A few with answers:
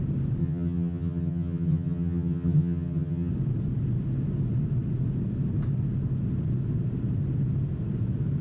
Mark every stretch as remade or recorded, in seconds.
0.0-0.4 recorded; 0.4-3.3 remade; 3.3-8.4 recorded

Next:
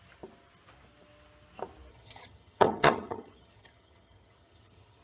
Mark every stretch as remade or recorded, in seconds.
0.0-1.9 recorded; 1.9-5.0 remade